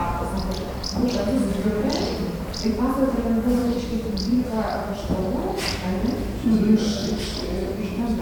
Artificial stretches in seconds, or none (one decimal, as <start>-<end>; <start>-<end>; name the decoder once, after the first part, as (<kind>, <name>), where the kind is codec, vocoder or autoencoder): 0.0-2.8 (vocoder, BigVGAN v2); 3.6-4.9